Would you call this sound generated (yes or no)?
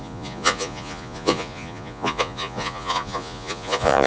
yes